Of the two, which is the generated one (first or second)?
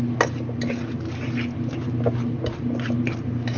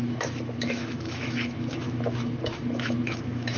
second